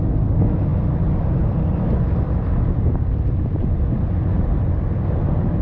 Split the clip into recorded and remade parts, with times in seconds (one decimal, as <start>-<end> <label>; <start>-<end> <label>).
0.0-0.7 recorded; 0.7-4.1 remade; 4.1-5.6 recorded